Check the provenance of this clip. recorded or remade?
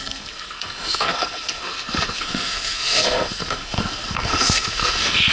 remade